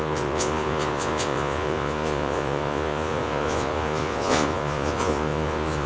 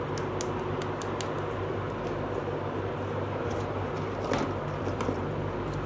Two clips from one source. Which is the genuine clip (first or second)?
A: second